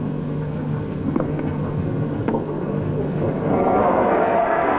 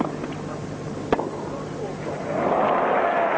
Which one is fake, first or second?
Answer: first